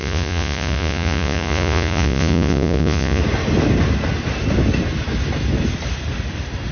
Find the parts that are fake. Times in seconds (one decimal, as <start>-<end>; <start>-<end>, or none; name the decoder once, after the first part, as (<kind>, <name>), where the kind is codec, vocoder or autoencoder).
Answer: 0.0-3.2 (vocoder, Vocos)